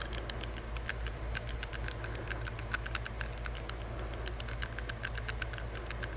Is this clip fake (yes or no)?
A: no